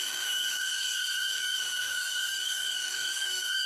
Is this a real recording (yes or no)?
no